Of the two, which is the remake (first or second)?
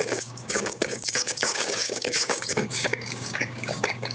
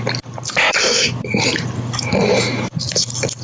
first